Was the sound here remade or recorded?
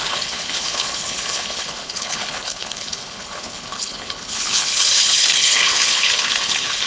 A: remade